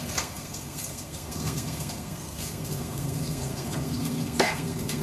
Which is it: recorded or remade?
remade